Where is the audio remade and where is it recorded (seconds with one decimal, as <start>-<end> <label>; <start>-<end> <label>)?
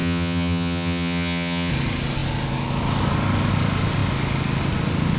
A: 0.0-1.7 remade; 1.7-5.2 recorded